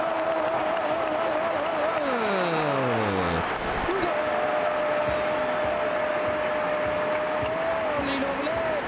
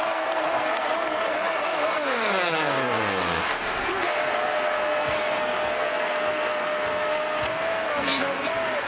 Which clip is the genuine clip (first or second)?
first